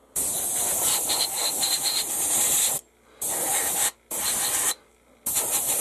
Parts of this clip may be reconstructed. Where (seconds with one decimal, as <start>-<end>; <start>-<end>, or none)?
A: none